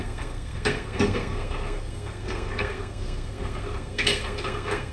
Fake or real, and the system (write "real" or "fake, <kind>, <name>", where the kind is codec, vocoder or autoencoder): fake, codec, SNAC